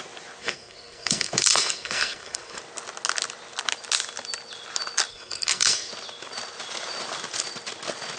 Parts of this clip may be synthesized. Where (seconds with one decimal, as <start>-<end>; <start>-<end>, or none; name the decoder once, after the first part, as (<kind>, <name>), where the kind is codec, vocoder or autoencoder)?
0.4-2.6 (codec, SNAC); 5.1-5.9